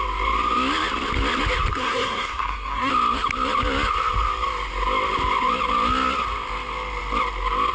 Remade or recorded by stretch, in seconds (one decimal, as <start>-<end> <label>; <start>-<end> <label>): 0.0-1.7 recorded; 1.7-2.9 remade; 2.9-7.7 recorded